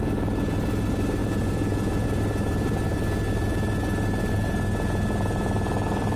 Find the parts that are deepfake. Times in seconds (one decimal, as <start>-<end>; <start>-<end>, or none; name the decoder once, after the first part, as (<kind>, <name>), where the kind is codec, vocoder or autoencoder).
1.2-2.2 (vocoder, Vocos)